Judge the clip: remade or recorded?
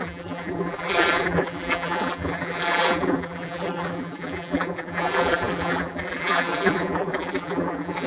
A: remade